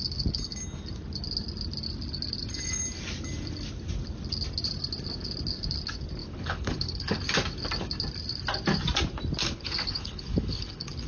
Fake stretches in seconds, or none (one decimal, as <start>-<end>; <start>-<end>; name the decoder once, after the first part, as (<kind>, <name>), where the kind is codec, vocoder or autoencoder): 6.2-7.2 (codec, HILCodec); 9.4-11.1